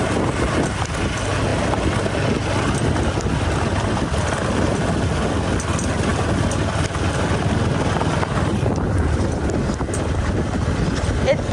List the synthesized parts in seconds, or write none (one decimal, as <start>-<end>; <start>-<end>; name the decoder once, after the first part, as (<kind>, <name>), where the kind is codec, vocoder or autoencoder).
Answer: none